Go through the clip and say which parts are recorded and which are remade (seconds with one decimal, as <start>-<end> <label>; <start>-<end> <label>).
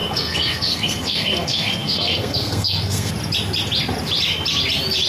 0.0-3.1 remade; 3.1-5.1 recorded